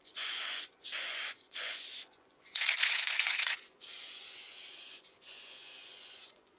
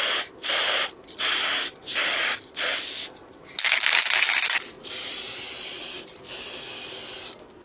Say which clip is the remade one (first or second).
first